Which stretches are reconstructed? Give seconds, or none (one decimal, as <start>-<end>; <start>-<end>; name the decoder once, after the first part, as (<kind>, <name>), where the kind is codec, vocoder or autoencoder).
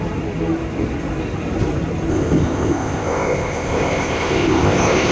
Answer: 2.1-5.1 (codec, ZipCodec)